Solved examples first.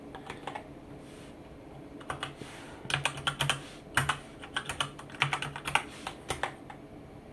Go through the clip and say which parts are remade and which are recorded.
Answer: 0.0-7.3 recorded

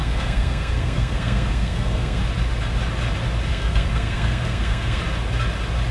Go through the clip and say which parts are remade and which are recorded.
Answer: 0.0-2.2 remade; 2.2-3.5 recorded; 3.5-5.0 remade; 5.0-5.9 recorded

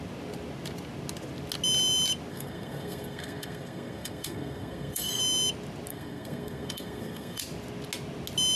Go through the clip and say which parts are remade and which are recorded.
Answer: 0.0-2.3 recorded; 2.3-5.2 remade; 5.2-5.9 recorded; 5.9-7.4 remade; 7.4-8.6 recorded

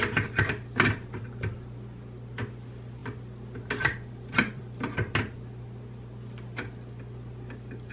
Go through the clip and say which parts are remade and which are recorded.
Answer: 0.0-7.9 recorded

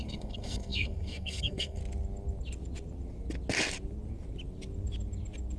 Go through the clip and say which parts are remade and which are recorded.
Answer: 0.0-1.8 remade; 1.8-5.6 recorded

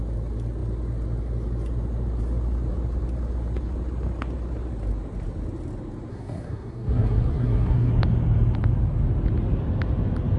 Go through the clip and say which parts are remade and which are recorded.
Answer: 0.0-6.1 recorded; 6.1-7.9 remade; 7.9-10.4 recorded

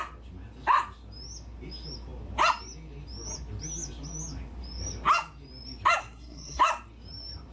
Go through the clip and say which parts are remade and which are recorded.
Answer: 0.0-6.0 recorded; 6.0-6.6 remade; 6.6-7.5 recorded

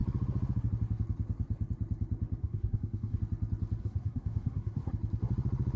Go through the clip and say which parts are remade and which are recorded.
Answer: 0.0-2.4 recorded; 2.4-3.2 remade; 3.2-3.8 recorded; 3.8-4.9 remade; 4.9-5.8 recorded